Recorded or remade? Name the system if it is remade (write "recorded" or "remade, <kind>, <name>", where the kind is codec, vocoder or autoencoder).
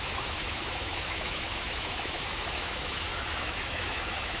remade, autoencoder, DAC-VAE